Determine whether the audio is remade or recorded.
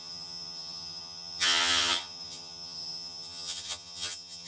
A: remade